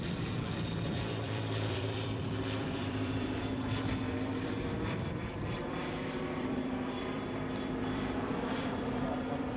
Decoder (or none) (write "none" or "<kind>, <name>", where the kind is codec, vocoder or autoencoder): vocoder, BigVGAN v2